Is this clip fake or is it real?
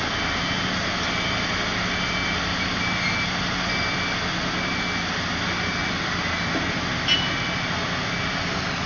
real